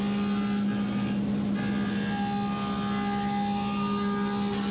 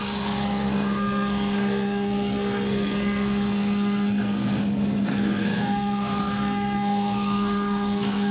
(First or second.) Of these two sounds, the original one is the first